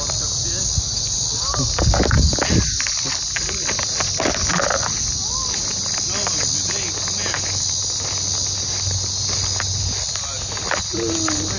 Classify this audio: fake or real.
real